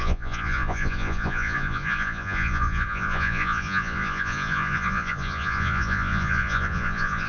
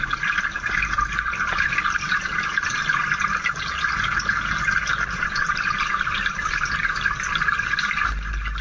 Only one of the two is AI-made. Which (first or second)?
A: first